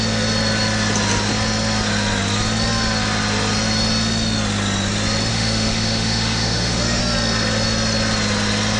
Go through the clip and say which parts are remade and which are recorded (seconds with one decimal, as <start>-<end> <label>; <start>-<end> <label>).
0.0-5.3 recorded; 5.3-7.0 remade; 7.0-8.8 recorded